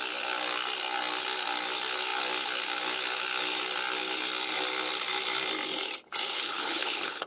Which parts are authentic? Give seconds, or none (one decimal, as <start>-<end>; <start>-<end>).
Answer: 0.0-6.3